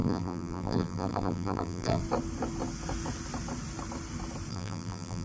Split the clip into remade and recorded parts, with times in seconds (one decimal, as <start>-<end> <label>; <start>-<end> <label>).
0.0-2.0 remade; 2.0-4.5 recorded; 4.5-5.2 remade